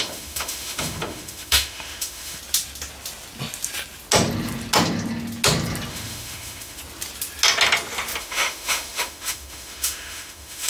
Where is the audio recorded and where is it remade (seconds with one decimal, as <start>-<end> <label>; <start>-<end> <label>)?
0.0-2.4 remade; 2.4-5.9 recorded; 5.9-6.8 remade; 6.8-8.2 recorded; 8.2-10.7 remade